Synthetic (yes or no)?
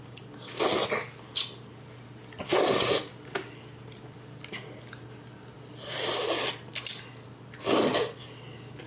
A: no